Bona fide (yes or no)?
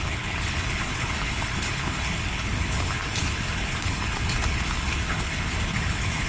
no